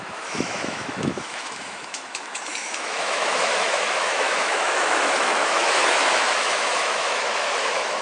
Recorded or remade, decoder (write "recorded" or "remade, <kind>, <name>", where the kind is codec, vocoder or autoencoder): remade, autoencoder, DAC-VAE